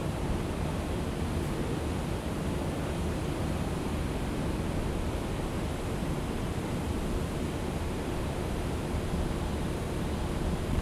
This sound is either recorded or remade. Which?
recorded